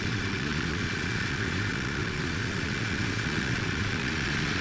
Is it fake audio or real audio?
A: fake